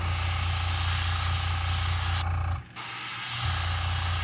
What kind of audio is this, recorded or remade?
recorded